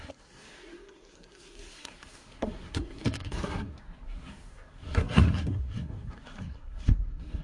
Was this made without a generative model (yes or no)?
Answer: no